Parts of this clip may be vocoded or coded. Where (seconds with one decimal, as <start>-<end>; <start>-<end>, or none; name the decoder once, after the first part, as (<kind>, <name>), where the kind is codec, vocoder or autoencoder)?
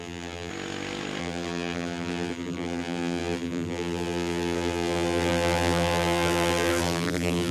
0.0-0.5 (vocoder, BigVGAN v2); 1.2-7.5